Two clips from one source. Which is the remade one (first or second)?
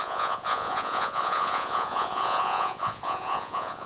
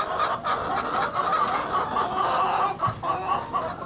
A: first